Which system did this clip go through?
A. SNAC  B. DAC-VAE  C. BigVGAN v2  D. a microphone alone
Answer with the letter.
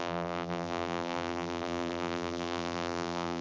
C